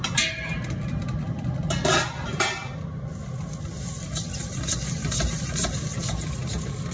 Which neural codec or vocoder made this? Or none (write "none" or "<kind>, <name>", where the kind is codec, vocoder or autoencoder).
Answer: none